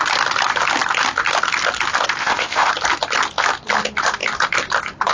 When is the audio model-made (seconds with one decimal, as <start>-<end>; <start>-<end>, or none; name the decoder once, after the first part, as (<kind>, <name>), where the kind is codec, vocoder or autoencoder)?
2.2-2.7 (codec, ZipCodec)